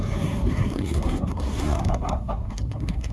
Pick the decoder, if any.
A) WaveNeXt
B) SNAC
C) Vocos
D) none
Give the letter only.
B